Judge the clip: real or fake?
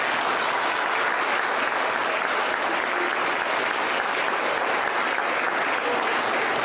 real